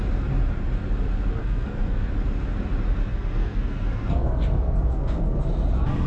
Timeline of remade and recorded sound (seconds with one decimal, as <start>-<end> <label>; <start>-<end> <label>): 0.0-1.4 recorded; 1.4-2.1 remade; 2.1-3.1 recorded; 3.1-5.4 remade; 5.4-6.1 recorded